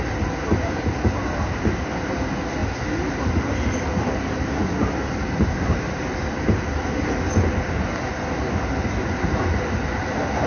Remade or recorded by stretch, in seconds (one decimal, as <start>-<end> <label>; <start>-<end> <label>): 0.0-10.5 recorded